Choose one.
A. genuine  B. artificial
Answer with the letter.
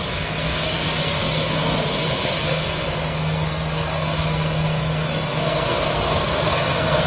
B